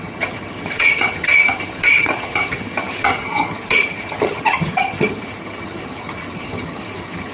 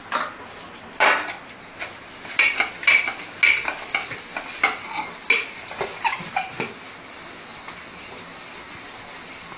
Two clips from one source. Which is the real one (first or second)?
second